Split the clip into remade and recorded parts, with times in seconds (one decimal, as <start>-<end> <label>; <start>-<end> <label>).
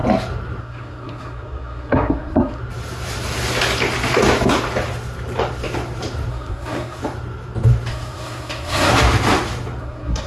0.0-0.6 recorded; 0.6-2.6 remade; 2.6-6.3 recorded; 6.3-7.0 remade; 7.0-7.9 recorded; 7.9-8.9 remade; 8.9-9.8 recorded; 9.8-10.3 remade